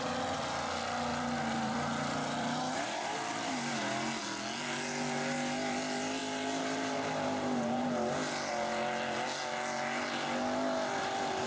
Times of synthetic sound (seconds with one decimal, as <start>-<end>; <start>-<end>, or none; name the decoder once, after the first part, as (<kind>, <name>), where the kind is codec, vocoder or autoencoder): 1.1-3.3 (vocoder, BigVGAN v2)